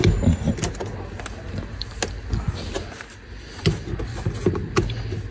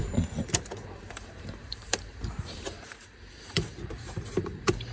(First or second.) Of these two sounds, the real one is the first